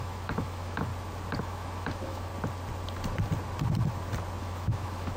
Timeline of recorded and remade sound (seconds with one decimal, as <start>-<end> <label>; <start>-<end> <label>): 0.0-0.9 remade; 0.9-1.4 recorded; 1.4-2.3 remade; 2.3-4.4 recorded; 4.4-5.2 remade